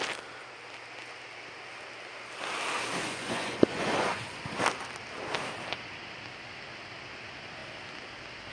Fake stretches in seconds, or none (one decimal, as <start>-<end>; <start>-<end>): 3.0-4.4